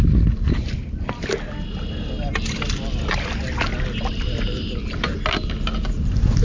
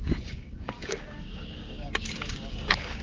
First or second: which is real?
first